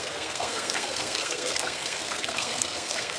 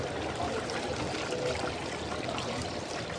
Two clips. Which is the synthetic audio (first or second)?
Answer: first